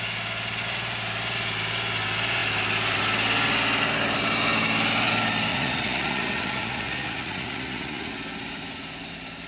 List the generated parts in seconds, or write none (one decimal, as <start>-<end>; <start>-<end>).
5.5-8.1